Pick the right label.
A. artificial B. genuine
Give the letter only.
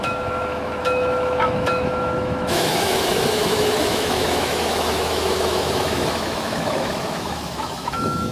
A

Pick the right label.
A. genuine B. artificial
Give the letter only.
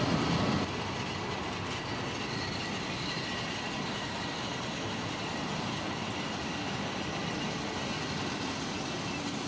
A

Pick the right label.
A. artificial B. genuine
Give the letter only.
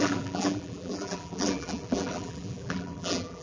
A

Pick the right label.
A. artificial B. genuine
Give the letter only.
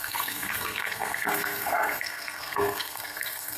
A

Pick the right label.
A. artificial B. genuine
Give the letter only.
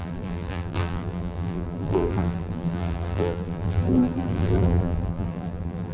A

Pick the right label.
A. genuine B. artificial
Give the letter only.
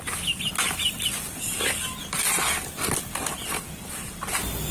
A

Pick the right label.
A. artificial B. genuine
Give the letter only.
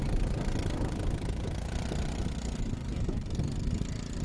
B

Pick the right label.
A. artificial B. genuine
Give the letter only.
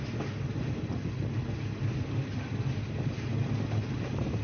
B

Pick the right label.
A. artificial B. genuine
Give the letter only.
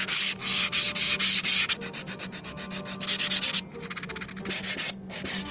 B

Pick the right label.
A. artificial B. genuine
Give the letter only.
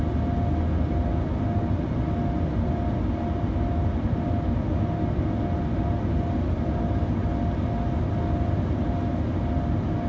B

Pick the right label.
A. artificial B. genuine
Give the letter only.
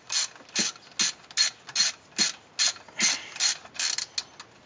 B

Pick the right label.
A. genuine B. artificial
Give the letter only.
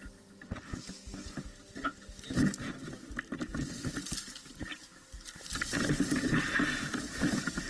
A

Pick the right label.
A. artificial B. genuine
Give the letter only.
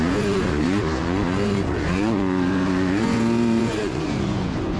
A